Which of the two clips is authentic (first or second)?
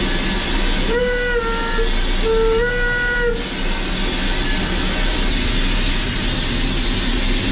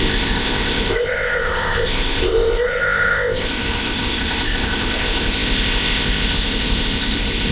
first